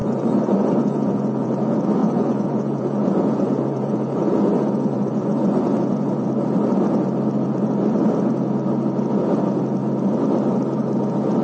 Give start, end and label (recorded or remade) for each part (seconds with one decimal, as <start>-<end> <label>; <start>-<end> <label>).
0.0-1.5 remade; 1.5-2.0 recorded; 2.0-6.3 remade; 6.3-11.4 recorded